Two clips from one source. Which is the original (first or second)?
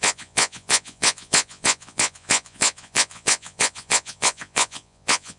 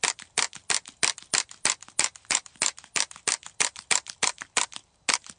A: second